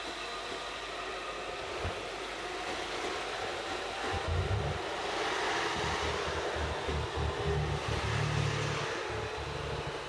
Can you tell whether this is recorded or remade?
recorded